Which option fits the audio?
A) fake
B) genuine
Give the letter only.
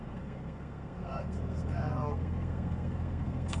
A